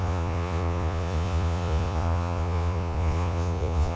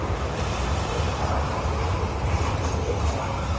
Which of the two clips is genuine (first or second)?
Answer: second